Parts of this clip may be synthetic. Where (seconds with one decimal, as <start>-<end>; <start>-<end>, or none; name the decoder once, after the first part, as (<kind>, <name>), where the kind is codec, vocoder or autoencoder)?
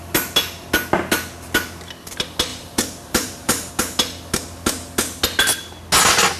2.5-3.7 (vocoder, BigVGAN v2)